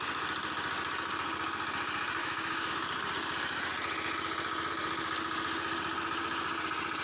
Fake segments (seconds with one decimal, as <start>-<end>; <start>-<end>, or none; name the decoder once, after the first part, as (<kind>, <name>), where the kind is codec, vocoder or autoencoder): 2.2-2.7 (autoencoder, DAC-VAE)